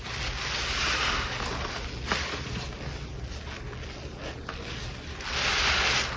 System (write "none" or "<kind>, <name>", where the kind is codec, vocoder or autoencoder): none